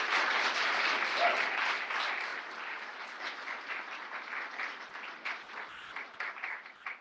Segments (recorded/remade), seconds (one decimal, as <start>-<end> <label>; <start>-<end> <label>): 0.0-7.0 recorded